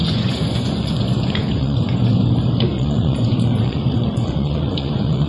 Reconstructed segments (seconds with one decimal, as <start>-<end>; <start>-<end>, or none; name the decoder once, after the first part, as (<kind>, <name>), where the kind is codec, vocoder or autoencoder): 0.0-2.2 (vocoder, Vocos); 2.7-5.3